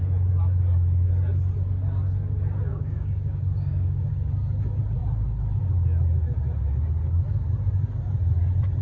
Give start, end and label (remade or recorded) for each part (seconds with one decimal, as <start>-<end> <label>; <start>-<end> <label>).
0.0-2.7 recorded; 2.7-4.1 remade; 4.1-8.8 recorded